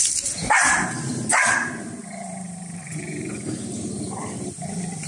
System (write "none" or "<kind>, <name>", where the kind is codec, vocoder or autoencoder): vocoder, BigVGAN v2